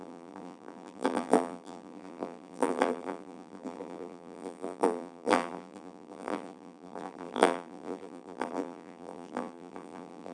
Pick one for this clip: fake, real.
fake